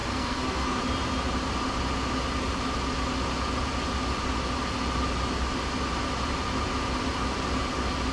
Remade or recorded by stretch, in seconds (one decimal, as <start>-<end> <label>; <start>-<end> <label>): 0.0-0.8 remade; 0.8-8.1 recorded